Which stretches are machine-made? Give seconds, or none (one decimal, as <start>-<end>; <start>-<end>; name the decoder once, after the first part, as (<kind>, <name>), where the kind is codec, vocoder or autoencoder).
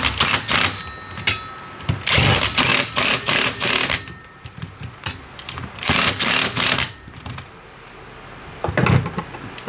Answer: 2.7-7.9 (vocoder, BigVGAN v2)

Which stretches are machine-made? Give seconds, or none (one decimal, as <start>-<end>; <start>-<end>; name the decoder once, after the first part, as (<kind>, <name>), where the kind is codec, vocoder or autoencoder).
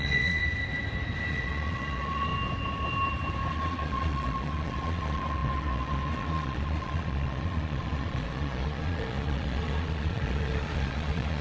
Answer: 0.0-0.4 (vocoder, Vocos); 1.3-2.3; 3.5-11.4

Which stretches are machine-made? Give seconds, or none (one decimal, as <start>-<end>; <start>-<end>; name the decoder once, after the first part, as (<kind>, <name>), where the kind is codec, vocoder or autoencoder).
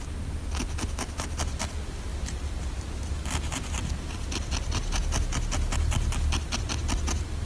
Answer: none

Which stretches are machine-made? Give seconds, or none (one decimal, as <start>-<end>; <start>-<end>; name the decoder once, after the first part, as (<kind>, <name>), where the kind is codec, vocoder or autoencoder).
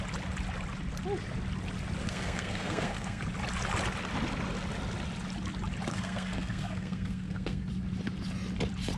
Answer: 2.0-3.2 (codec, SNAC); 5.9-7.7